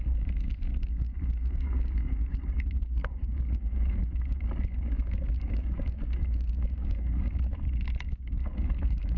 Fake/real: fake